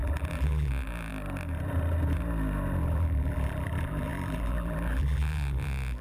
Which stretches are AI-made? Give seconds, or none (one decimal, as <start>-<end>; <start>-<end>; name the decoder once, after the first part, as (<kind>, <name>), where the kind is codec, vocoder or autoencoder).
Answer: 0.0-1.1 (vocoder, BigVGAN v2); 2.8-6.0